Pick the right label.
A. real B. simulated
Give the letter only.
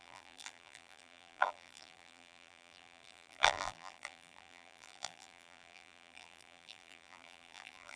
B